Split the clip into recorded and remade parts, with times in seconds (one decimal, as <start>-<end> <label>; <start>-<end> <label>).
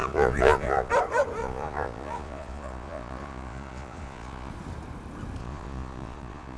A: 0.0-0.9 remade; 0.9-1.4 recorded; 1.4-4.5 remade; 4.5-5.4 recorded; 5.4-6.6 remade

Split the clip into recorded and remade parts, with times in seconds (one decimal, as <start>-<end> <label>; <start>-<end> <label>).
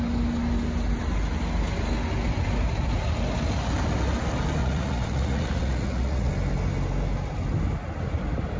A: 0.0-4.6 recorded; 4.6-6.3 remade; 6.3-8.6 recorded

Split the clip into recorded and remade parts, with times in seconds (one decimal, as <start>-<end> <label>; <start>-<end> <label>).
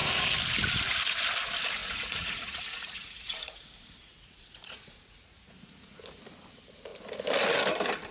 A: 0.0-1.8 recorded; 1.8-6.0 remade; 6.0-8.1 recorded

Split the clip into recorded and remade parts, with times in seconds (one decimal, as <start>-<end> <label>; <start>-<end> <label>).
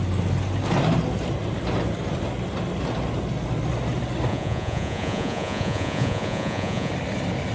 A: 0.0-4.3 recorded; 4.3-6.9 remade; 6.9-7.5 recorded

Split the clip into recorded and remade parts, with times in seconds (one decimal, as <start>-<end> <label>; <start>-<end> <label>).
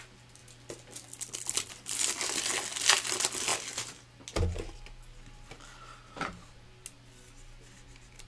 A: 0.0-8.3 recorded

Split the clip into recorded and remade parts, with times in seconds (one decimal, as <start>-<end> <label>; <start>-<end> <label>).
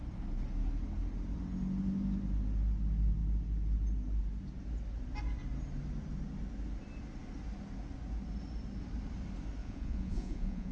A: 0.0-9.6 recorded; 9.6-10.7 remade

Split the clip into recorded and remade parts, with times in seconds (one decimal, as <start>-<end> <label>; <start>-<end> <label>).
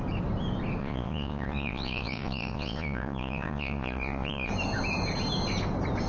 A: 0.0-0.8 recorded; 0.8-4.5 remade; 4.5-6.1 recorded